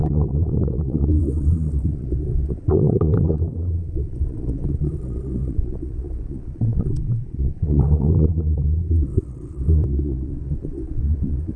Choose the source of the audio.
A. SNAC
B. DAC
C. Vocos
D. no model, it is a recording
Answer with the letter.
C